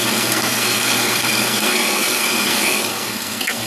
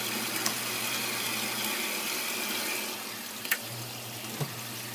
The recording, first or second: second